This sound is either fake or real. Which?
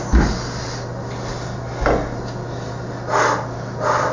real